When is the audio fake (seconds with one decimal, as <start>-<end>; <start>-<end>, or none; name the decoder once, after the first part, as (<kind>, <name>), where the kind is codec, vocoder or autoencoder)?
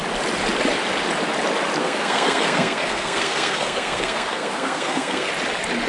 1.8-5.3 (codec, SNAC)